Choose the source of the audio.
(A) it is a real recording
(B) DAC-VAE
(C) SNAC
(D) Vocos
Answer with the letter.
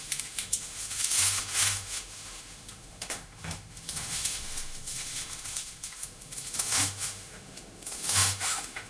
B